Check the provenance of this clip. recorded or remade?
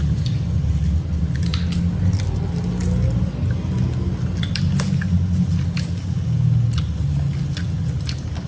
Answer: recorded